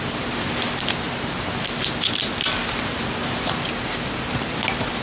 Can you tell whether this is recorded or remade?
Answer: recorded